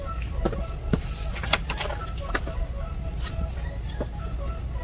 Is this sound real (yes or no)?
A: yes